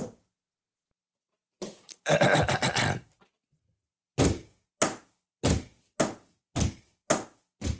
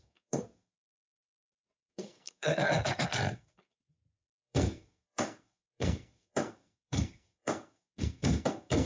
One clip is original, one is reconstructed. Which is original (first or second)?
first